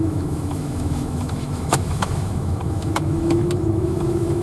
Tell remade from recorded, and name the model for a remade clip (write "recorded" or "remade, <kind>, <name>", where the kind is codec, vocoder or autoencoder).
remade, autoencoder, DAC-VAE